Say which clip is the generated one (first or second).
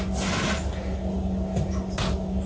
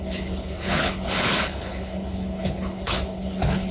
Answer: second